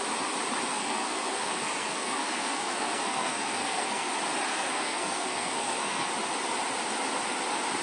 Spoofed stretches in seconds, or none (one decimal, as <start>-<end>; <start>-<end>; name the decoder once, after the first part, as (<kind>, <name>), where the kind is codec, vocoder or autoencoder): 0.7-4.1 (codec, SNAC); 4.5-6.1

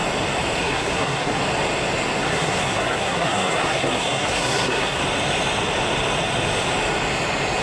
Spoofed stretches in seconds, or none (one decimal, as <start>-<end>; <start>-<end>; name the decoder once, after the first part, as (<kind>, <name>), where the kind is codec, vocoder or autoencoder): 0.6-1.4 (codec, SNAC); 2.2-5.0